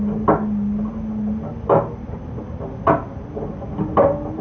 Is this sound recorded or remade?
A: recorded